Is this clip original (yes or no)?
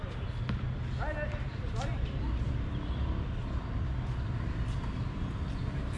yes